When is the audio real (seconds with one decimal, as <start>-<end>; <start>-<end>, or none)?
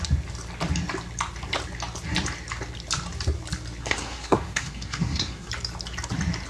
0.0-3.8; 5.5-6.5